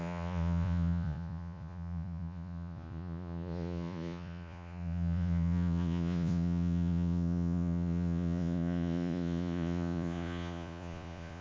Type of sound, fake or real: fake